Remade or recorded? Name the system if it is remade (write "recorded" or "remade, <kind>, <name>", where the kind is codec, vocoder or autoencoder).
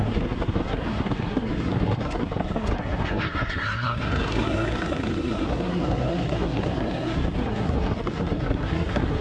remade, codec, SNAC